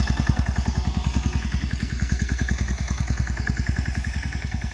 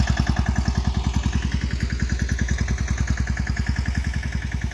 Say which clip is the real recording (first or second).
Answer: second